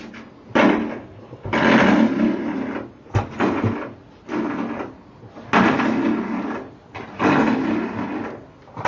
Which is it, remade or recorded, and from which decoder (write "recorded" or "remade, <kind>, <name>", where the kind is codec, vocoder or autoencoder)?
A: recorded